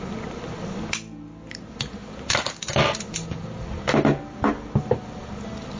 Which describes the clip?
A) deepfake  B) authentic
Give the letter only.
B